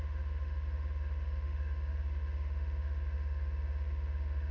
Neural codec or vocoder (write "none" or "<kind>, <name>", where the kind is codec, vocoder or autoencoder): autoencoder, DAC-VAE